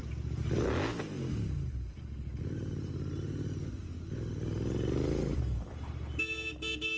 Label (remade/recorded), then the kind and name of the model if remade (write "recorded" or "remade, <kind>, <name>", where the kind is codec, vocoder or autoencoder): recorded